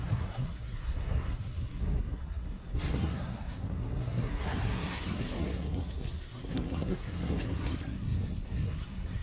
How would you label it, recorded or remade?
remade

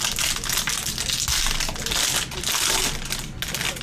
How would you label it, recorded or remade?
recorded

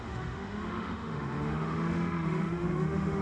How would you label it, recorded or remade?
remade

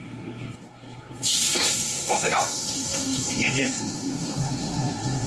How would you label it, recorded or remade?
remade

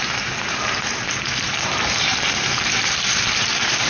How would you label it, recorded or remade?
remade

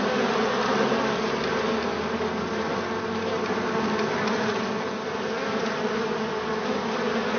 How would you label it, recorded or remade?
recorded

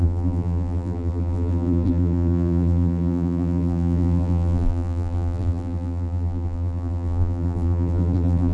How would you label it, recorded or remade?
remade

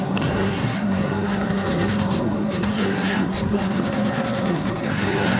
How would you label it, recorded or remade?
remade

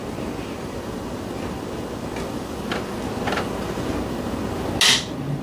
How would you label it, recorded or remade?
recorded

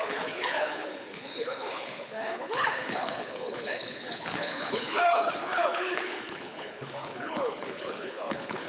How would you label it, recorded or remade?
remade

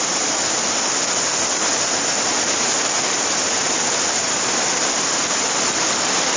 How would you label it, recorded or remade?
recorded